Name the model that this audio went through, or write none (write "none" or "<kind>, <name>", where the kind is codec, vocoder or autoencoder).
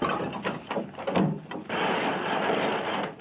vocoder, BigVGAN v2